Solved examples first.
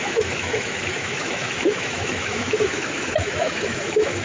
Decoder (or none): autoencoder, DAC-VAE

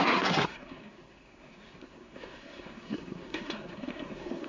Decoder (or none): codec, SNAC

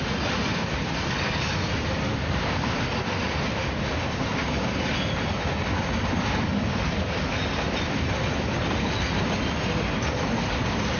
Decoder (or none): none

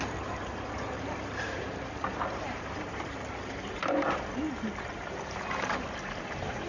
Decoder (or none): vocoder, BigVGAN v2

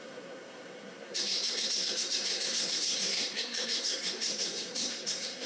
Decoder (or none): codec, SNAC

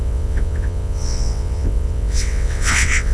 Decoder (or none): vocoder, WaveNeXt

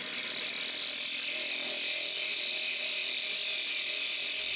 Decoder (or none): none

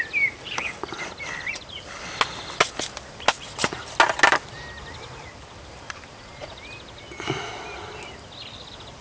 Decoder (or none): none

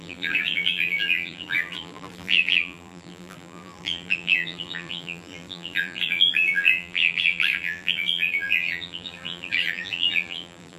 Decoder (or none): vocoder, BigVGAN v2